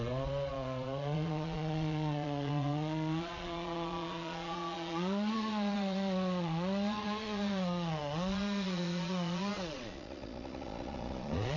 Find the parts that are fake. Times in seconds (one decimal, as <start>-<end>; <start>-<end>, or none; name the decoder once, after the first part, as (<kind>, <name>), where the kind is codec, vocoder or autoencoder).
0.0-11.6 (vocoder, Vocos)